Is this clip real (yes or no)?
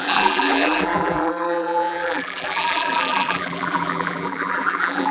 no